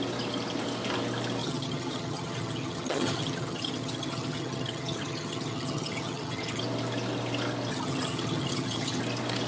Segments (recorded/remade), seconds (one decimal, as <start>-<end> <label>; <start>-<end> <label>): 0.0-1.4 recorded; 1.4-6.6 remade; 6.6-7.7 recorded; 7.7-9.0 remade; 9.0-9.5 recorded